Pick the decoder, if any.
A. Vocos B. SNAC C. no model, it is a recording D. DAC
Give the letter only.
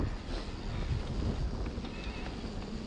C